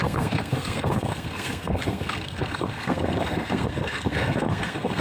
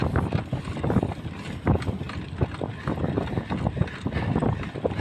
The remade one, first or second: first